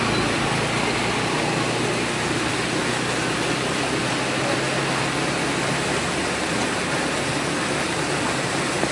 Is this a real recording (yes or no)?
yes